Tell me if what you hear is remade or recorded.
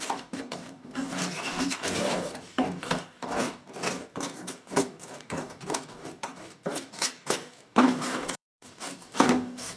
remade